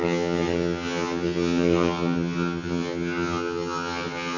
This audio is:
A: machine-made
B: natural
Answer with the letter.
A